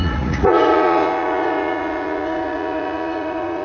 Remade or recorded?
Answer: remade